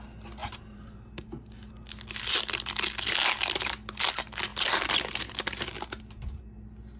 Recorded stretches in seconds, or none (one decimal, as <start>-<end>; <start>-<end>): 0.0-0.4; 1.7-7.0